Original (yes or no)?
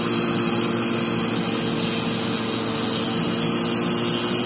yes